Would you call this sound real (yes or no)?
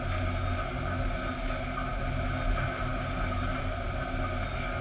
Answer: yes